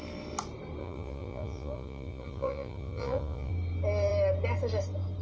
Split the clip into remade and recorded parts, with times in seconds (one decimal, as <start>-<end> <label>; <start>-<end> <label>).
0.0-0.8 recorded; 0.8-3.5 remade; 3.5-5.2 recorded